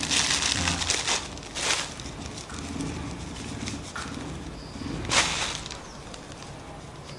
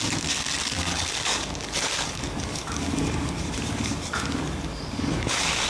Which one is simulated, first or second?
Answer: second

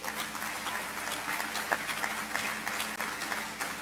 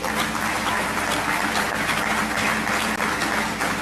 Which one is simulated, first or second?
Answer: second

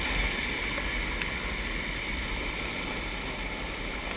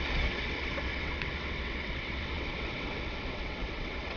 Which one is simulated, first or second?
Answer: second